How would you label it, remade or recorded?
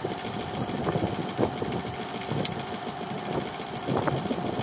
recorded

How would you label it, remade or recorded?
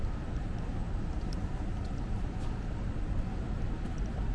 recorded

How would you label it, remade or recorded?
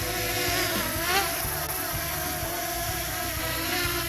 recorded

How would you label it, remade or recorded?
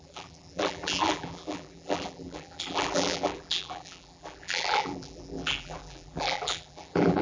remade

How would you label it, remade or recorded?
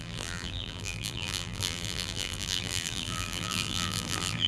remade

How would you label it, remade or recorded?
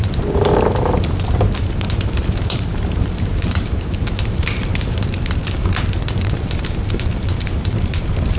remade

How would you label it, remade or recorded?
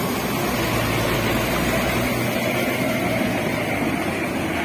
recorded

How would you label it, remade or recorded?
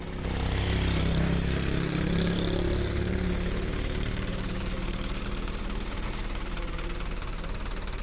remade